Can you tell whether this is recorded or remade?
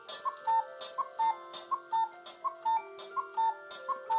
recorded